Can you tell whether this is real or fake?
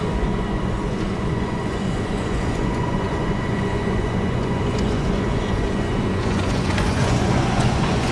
fake